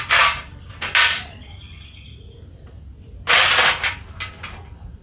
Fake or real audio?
real